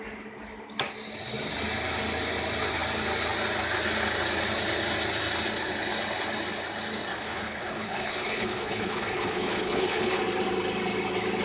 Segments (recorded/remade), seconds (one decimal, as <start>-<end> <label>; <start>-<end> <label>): 0.0-7.1 recorded; 7.1-10.2 remade; 10.2-11.4 recorded